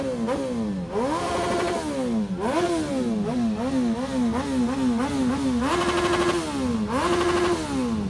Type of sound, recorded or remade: recorded